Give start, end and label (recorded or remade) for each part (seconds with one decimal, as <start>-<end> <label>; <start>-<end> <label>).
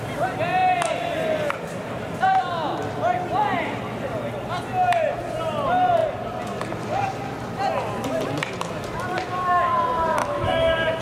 0.0-10.2 recorded; 10.2-11.0 remade